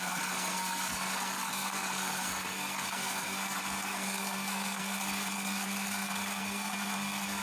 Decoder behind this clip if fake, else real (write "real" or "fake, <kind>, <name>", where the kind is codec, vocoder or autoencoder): fake, codec, SNAC